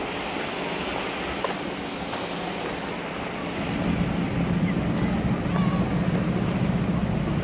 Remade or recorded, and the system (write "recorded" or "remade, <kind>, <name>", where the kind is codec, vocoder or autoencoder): recorded